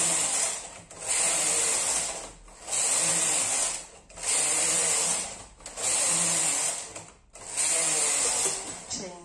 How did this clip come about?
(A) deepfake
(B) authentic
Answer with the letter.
B